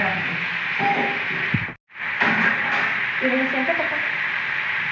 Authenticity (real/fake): real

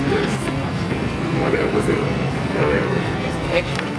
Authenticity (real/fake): fake